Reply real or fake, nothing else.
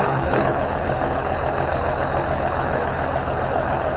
fake